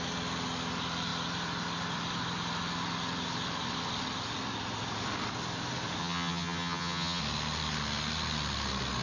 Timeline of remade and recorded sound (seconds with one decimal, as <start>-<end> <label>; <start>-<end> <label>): 0.0-6.0 recorded; 6.0-7.2 remade; 7.2-9.0 recorded